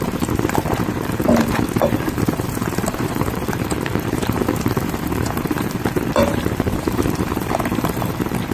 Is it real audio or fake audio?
fake